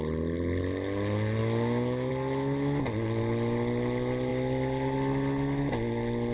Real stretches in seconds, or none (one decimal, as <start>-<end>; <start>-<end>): 0.0-1.4; 2.1-6.3